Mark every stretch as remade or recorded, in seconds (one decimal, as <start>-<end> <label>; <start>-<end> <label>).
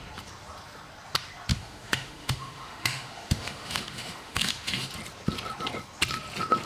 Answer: 0.0-1.5 recorded; 1.5-4.9 remade; 4.9-6.7 recorded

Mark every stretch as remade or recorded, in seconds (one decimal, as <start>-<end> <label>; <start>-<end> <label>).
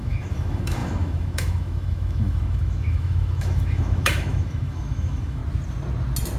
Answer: 0.0-5.4 remade; 5.4-6.4 recorded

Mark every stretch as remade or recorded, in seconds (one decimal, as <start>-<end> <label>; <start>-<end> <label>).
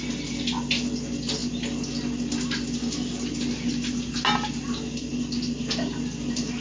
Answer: 0.0-6.6 recorded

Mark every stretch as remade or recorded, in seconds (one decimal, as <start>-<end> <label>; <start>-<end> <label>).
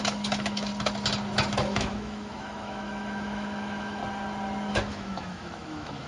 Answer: 0.0-0.7 remade; 0.7-1.5 recorded; 1.5-4.0 remade; 4.0-4.7 recorded; 4.7-6.1 remade